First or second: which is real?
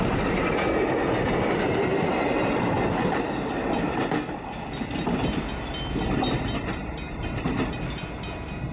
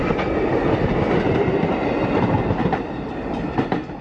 first